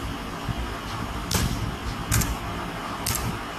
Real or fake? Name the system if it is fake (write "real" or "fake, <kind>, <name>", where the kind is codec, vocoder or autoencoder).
real